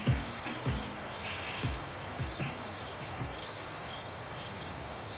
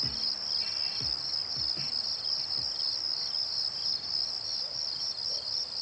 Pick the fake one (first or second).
first